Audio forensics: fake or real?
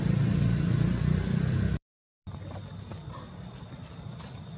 real